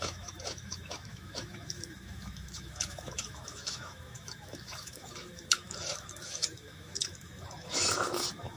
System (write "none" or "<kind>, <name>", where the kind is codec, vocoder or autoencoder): autoencoder, DAC-VAE